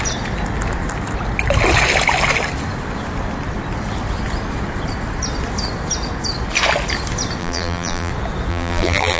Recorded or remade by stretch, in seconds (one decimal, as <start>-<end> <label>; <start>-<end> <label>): 0.0-7.4 recorded; 7.4-8.1 remade; 8.1-8.5 recorded; 8.5-9.2 remade